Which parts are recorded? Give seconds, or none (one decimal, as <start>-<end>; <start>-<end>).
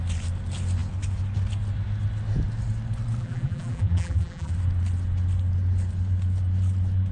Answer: 0.0-3.2; 4.5-7.1